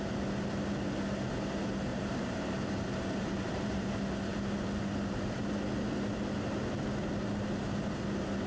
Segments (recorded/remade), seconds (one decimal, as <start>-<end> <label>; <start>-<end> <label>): 0.0-1.9 recorded; 1.9-3.9 remade; 3.9-8.5 recorded